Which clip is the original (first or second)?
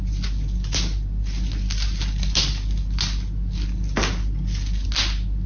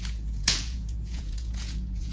first